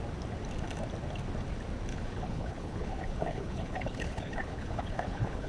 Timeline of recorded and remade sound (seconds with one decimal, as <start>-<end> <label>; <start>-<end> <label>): 0.0-1.9 recorded; 1.9-5.5 remade